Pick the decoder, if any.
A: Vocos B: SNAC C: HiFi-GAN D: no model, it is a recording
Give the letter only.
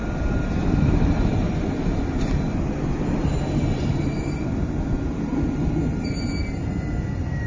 D